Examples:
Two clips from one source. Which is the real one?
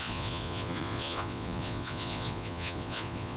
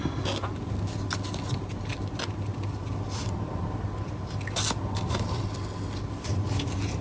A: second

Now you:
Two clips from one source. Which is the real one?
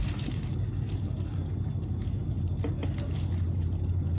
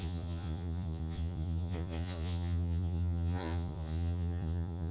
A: first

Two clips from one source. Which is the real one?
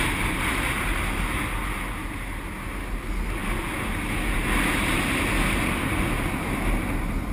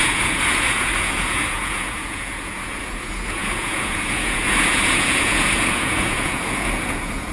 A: first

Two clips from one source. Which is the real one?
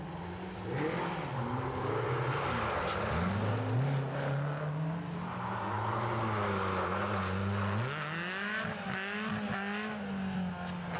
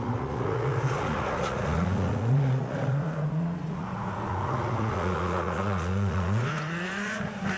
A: first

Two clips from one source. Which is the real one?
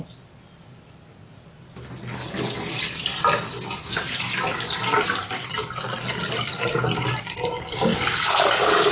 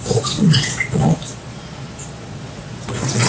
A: first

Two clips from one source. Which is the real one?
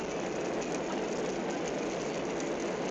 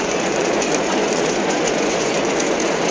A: first